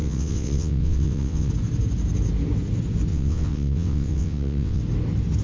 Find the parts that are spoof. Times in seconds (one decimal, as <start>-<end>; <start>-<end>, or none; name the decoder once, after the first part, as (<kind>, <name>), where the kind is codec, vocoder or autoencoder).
0.0-1.5 (vocoder, WaveNeXt); 3.1-4.8

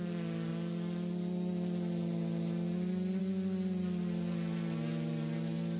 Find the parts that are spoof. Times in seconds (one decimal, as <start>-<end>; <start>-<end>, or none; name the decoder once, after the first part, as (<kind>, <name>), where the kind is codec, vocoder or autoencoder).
none

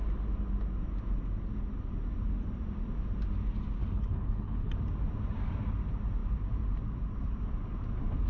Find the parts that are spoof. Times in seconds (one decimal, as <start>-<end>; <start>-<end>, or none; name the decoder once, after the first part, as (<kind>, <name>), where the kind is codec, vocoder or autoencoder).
3.8-4.7 (codec, HILCodec)

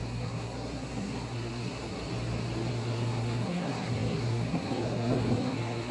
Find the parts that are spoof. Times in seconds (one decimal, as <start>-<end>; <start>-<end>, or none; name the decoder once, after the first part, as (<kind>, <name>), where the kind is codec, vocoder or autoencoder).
0.0-2.0 (codec, SNAC); 2.7-5.9

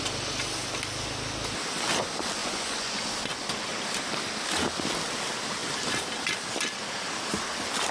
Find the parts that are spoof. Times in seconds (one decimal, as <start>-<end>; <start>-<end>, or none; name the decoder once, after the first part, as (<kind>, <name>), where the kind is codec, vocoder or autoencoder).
2.4-3.1 (vocoder, Vocos)

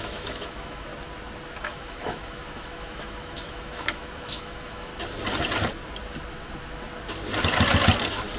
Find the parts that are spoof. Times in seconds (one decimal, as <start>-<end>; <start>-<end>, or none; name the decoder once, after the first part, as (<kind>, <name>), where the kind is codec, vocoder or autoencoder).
0.0-0.9 (autoencoder, DAC-VAE); 1.6-4.9

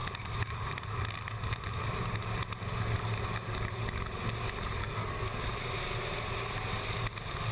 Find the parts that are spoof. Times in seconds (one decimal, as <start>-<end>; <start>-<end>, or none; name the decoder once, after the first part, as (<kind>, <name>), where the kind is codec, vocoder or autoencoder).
4.8-5.4 (codec, SNAC)